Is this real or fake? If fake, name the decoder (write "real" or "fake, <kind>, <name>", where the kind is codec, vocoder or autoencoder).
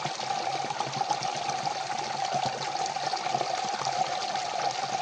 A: real